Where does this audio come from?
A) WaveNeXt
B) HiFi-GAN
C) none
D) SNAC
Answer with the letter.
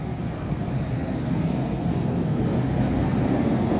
D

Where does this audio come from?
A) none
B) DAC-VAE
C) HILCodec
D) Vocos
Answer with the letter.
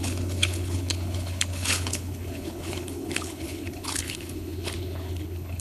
C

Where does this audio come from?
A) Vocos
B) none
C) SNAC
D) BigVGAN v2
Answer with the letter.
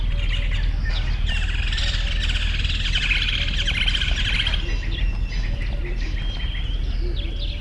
B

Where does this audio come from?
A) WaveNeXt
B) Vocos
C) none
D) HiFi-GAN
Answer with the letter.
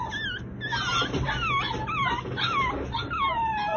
C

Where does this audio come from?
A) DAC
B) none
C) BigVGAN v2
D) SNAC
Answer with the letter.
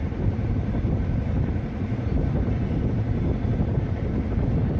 C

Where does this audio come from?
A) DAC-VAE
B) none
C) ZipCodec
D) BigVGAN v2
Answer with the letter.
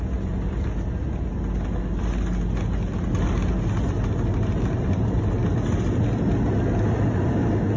B